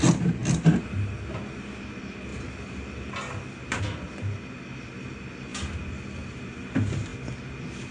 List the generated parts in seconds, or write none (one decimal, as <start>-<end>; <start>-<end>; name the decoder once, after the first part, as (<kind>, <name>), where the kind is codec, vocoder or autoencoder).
none